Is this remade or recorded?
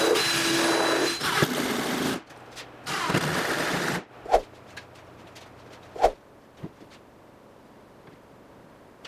recorded